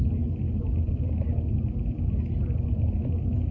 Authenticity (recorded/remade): recorded